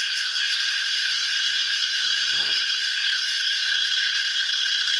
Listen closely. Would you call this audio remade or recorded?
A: remade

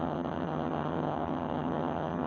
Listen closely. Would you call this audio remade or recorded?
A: remade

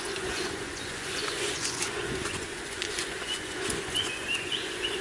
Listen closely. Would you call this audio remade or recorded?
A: remade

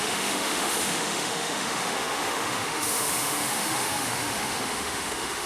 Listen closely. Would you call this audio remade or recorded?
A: remade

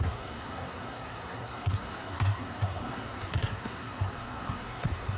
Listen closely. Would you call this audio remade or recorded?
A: remade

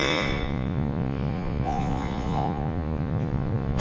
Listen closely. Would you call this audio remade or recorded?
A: remade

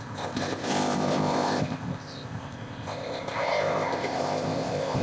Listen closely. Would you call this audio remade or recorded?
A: remade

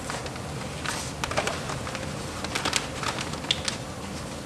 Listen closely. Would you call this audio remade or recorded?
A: recorded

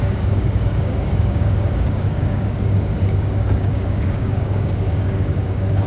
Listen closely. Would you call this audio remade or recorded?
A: remade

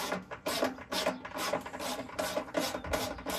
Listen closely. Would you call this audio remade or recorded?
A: recorded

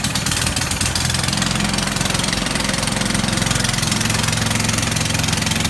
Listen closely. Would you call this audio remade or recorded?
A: remade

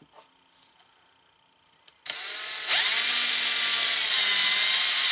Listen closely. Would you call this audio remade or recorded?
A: recorded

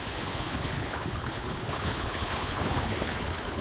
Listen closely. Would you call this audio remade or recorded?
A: remade